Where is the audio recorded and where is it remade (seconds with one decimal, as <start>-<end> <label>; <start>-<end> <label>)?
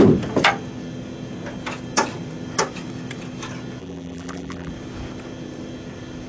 0.0-3.8 recorded; 3.8-4.7 remade; 4.7-6.3 recorded